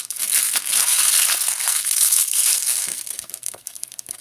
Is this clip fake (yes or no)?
yes